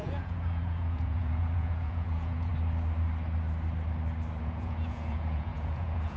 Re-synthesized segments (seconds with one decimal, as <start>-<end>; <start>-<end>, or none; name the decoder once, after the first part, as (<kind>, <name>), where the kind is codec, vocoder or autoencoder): 0.0-2.5 (vocoder, Vocos); 4.4-6.2